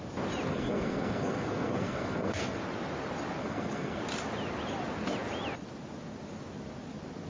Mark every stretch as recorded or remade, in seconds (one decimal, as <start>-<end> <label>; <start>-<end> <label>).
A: 0.0-0.5 recorded; 0.5-2.6 remade; 2.6-3.4 recorded; 3.4-4.0 remade; 4.0-7.3 recorded